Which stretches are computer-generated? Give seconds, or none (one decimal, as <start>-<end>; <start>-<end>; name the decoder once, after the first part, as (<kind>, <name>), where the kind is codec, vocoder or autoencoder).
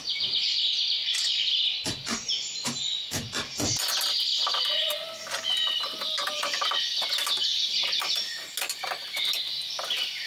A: none